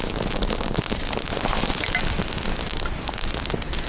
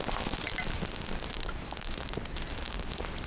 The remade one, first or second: second